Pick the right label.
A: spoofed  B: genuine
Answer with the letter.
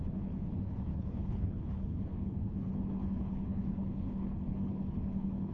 A